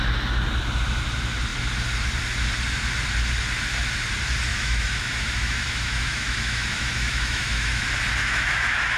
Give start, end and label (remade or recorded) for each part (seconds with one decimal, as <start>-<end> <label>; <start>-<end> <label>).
0.0-4.5 recorded; 4.5-7.8 remade; 7.8-8.2 recorded; 8.2-9.0 remade